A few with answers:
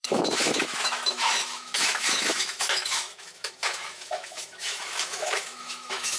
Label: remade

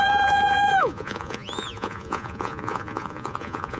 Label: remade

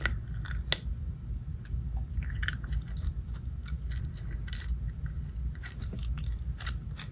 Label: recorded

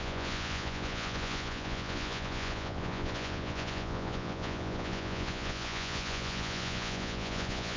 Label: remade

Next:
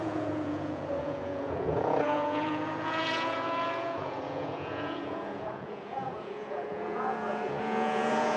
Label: remade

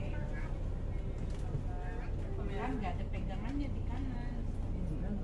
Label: recorded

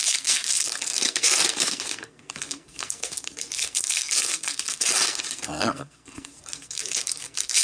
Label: remade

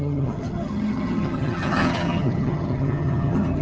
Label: remade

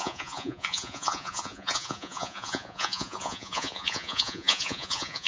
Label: remade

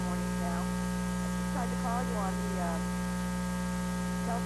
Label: recorded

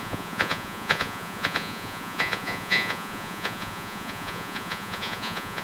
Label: remade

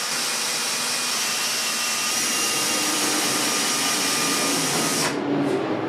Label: recorded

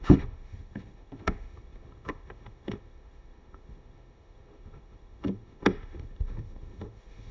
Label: remade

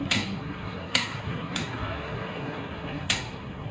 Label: remade